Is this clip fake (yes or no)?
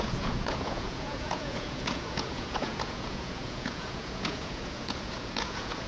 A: yes